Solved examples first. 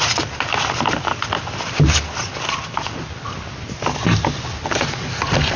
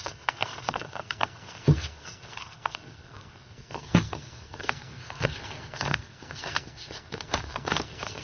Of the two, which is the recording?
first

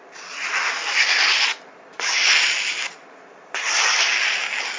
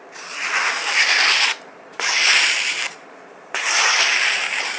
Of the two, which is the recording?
first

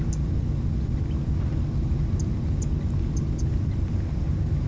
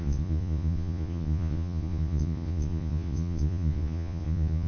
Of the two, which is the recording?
first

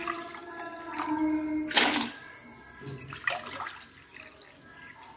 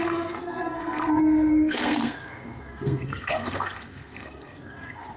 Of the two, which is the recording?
first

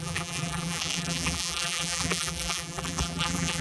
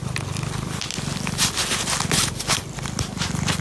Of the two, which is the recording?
second